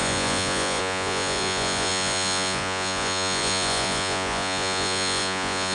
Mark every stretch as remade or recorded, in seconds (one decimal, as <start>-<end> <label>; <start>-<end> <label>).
0.0-5.7 remade